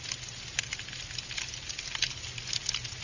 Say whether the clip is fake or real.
real